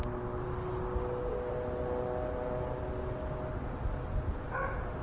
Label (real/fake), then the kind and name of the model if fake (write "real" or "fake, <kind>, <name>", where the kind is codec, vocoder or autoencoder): real